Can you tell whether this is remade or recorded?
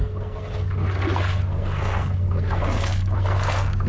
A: remade